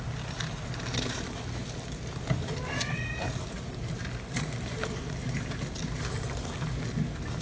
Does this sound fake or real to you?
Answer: real